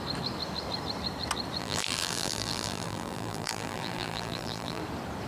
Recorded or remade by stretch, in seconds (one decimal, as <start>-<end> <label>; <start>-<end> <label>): 0.0-1.6 recorded; 1.6-4.8 remade; 4.8-5.3 recorded